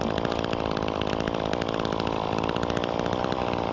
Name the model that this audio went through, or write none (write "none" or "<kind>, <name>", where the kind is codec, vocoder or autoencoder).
vocoder, BigVGAN v2